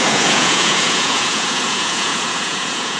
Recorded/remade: remade